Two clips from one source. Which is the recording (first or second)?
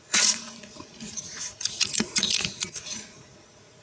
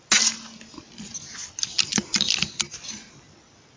second